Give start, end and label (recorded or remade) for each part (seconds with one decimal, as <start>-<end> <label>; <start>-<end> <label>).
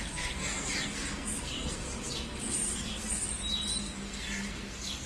0.0-3.3 remade; 3.3-3.8 recorded; 3.8-5.1 remade